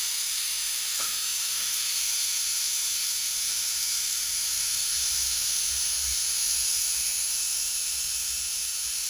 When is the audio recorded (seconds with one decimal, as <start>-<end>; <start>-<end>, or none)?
none